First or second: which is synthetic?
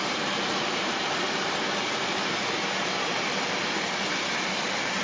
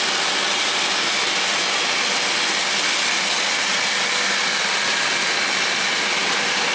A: first